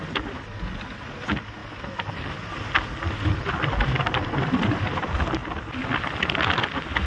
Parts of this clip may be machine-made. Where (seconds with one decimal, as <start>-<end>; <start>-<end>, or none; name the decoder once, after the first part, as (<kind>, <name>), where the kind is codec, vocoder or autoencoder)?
none